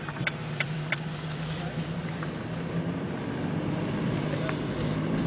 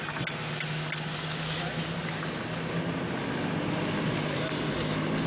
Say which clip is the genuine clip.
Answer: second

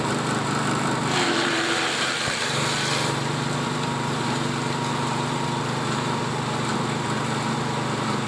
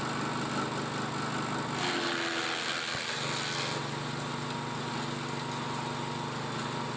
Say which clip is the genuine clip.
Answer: second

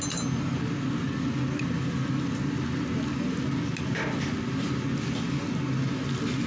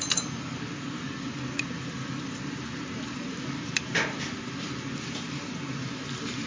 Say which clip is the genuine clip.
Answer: first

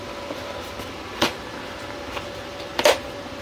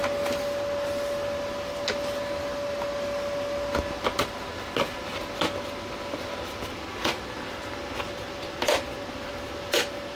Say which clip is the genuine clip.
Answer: second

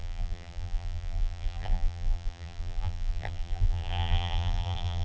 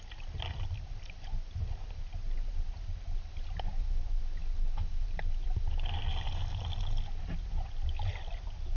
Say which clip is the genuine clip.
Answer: second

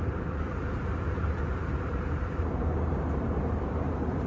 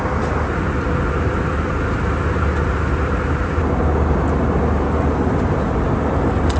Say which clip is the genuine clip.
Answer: second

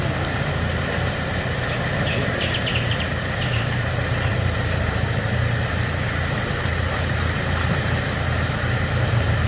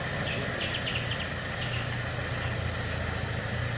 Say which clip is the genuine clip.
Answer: second